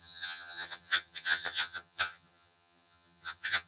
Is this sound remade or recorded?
remade